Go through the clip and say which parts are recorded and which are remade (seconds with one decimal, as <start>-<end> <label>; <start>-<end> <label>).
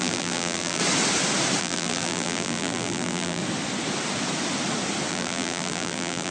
0.0-0.8 remade; 0.8-1.6 recorded; 1.6-3.4 remade; 3.4-5.1 recorded; 5.1-6.3 remade